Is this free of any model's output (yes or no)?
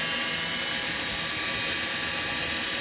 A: yes